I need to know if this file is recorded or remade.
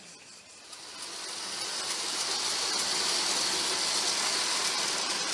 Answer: recorded